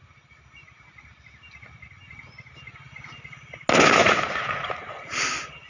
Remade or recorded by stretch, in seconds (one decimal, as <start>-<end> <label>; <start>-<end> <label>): 0.0-4.0 recorded; 4.0-5.2 remade; 5.2-5.7 recorded